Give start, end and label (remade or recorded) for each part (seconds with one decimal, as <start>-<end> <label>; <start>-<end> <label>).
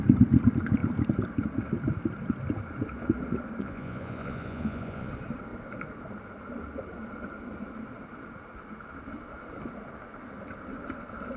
0.0-3.6 recorded; 3.6-5.1 remade; 5.1-11.4 recorded